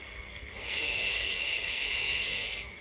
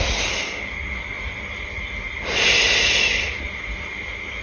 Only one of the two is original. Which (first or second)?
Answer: second